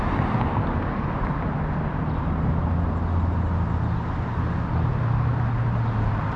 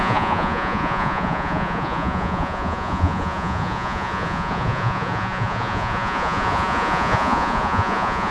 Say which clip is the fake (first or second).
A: second